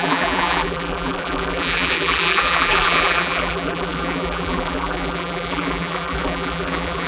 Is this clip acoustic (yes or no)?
no